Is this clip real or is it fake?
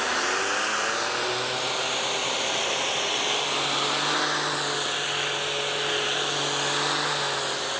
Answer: real